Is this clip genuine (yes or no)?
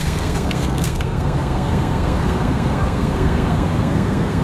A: no